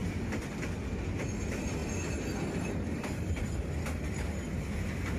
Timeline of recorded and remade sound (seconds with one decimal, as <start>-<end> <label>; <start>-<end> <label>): 0.0-5.2 recorded